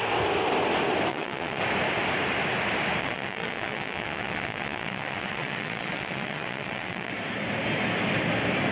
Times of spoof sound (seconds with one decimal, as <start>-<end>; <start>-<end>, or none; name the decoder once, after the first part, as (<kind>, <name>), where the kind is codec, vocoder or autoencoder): 1.1-1.6 (vocoder, WaveNeXt); 3.0-7.1